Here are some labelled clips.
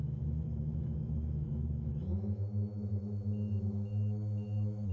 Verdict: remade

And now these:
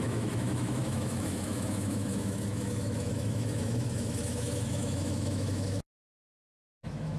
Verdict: remade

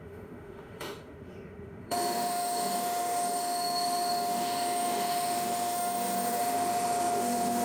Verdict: remade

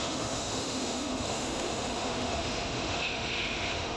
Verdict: remade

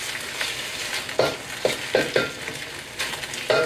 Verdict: recorded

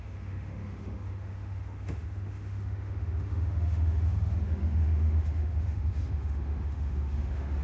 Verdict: remade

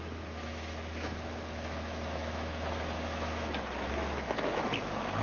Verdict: remade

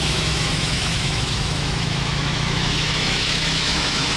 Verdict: remade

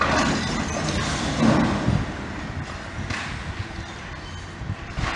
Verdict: recorded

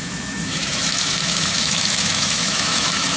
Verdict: remade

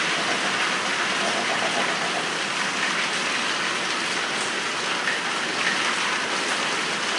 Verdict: recorded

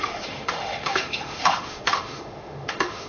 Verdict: remade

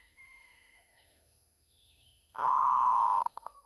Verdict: remade